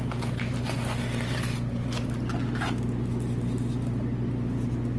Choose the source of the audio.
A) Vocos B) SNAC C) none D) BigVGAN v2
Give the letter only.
C